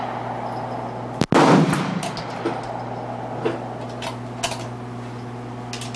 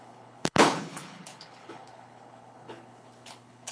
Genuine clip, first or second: first